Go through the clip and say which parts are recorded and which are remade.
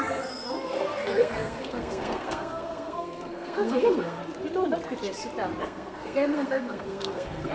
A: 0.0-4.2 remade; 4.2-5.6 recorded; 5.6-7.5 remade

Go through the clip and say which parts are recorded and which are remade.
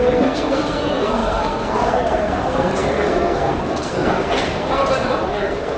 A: 0.0-4.8 remade; 4.8-5.3 recorded; 5.3-5.8 remade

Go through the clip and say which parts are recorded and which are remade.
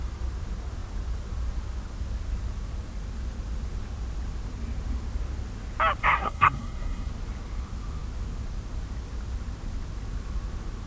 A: 0.0-6.0 recorded; 6.0-7.1 remade; 7.1-10.9 recorded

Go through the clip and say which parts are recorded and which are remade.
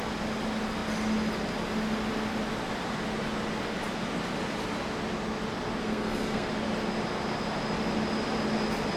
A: 0.0-5.8 recorded; 5.8-6.5 remade; 6.5-9.0 recorded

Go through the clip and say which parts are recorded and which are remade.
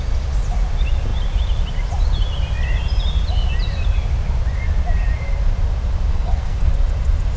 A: 0.0-6.1 recorded; 6.1-6.7 remade; 6.7-7.4 recorded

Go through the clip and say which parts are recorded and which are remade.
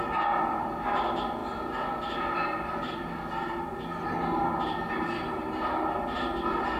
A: 0.0-6.8 recorded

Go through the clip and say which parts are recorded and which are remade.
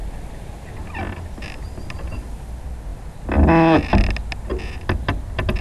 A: 0.0-5.6 recorded